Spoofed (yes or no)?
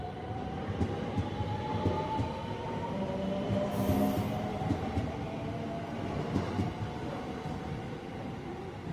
yes